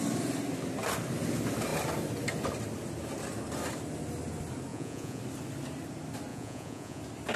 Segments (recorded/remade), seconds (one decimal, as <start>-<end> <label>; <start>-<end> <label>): 0.0-4.7 recorded; 4.7-5.2 remade; 5.2-6.3 recorded; 6.3-7.0 remade; 7.0-7.4 recorded